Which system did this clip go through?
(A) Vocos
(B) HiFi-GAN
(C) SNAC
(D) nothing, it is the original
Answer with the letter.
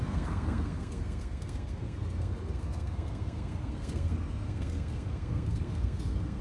C